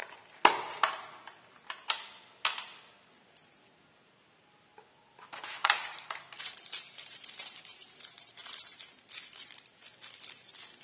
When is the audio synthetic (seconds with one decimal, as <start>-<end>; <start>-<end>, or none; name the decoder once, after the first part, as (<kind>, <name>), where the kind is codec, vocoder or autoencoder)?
5.6-9.6 (vocoder, BigVGAN v2)